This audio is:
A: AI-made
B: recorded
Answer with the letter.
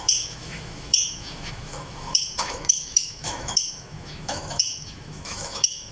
A